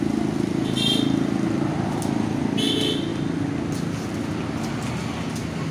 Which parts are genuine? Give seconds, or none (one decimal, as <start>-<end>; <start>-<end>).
0.0-5.7